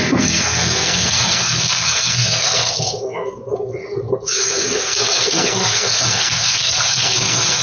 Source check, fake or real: fake